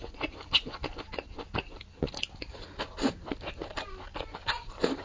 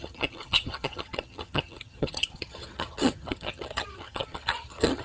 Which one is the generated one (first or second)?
second